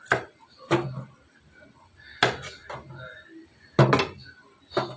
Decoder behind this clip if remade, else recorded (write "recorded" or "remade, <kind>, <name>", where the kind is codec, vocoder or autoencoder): recorded